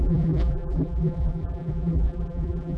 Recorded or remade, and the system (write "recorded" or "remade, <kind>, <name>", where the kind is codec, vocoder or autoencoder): remade, vocoder, BigVGAN v2